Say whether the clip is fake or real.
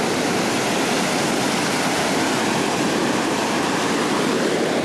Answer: real